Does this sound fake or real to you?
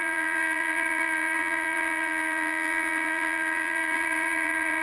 fake